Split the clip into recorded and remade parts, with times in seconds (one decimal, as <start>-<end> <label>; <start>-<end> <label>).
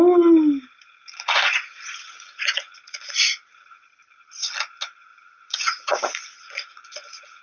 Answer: 0.0-1.0 recorded; 1.0-3.8 remade; 3.8-5.1 recorded; 5.1-7.4 remade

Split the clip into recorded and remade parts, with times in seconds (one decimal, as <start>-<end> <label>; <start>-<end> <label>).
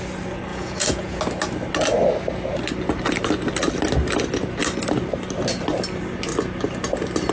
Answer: 0.0-0.5 recorded; 0.5-1.2 remade; 1.2-7.3 recorded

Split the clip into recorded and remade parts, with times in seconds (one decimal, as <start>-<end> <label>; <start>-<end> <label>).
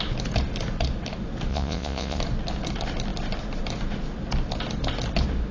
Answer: 0.0-1.5 recorded; 1.5-2.2 remade; 2.2-5.5 recorded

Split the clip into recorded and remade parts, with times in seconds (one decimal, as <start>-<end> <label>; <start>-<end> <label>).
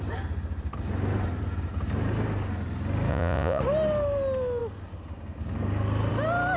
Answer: 0.0-3.1 recorded; 3.1-3.6 remade; 3.6-6.6 recorded